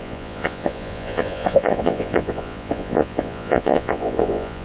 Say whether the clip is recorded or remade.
remade